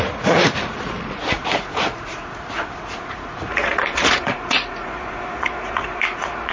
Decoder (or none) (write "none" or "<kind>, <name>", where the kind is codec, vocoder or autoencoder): vocoder, Vocos